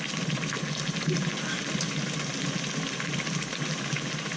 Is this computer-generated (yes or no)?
no